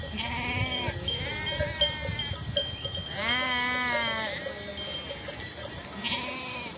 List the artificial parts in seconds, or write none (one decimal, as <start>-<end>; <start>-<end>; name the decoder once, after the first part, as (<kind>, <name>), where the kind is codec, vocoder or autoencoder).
none

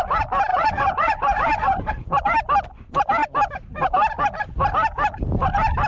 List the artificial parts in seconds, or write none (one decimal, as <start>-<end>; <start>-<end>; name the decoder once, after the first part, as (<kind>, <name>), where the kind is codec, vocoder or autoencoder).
0.5-1.9 (vocoder, Vocos)

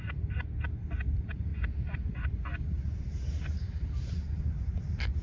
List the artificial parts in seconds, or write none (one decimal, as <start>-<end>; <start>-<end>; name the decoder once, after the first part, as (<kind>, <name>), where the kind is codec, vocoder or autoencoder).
none

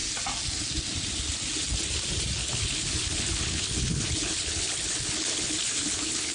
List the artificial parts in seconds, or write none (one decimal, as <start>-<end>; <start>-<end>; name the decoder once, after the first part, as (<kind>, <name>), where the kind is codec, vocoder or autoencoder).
2.4-6.3 (codec, HILCodec)